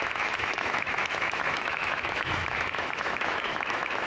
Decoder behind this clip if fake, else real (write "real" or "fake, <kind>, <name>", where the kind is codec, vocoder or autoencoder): fake, autoencoder, DAC-VAE